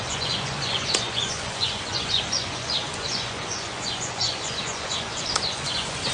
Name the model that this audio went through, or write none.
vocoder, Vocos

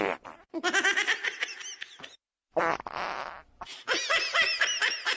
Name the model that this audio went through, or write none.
none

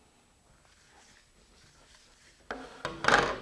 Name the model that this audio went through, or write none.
none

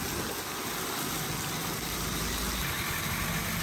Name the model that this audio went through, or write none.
none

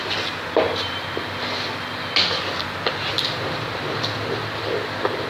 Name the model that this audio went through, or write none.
none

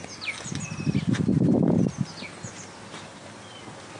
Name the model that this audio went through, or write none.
none